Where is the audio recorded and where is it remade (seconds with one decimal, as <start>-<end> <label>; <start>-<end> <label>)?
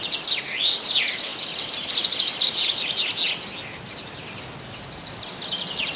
0.0-6.0 recorded